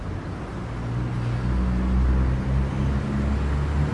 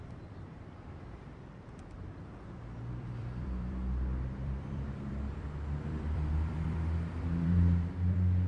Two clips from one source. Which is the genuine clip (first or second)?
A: first